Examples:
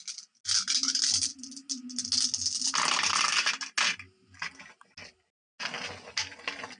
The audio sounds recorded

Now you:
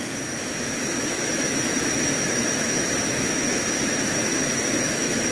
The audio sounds remade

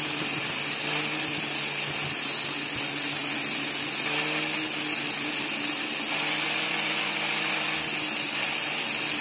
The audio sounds recorded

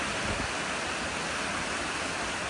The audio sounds recorded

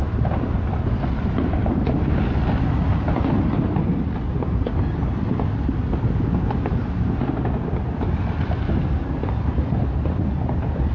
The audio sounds recorded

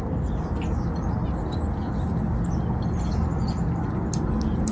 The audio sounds recorded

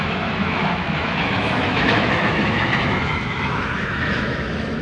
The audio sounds remade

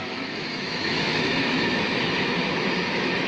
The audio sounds remade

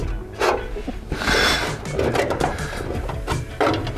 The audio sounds recorded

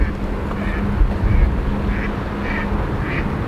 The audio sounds recorded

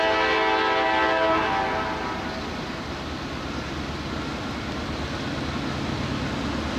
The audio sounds recorded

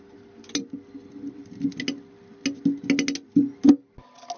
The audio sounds recorded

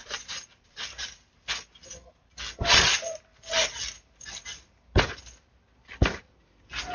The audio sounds recorded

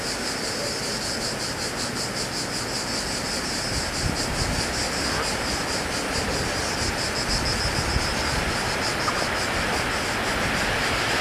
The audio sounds recorded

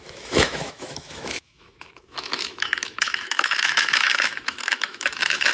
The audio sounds remade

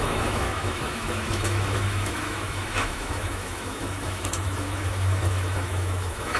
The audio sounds remade